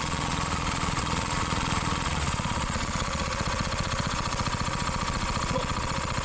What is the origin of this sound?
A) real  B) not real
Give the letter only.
B